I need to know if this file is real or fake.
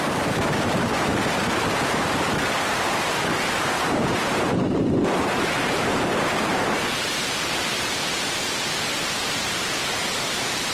fake